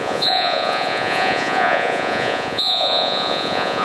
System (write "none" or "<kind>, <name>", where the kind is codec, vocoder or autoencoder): vocoder, Vocos